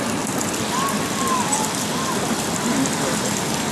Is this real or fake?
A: real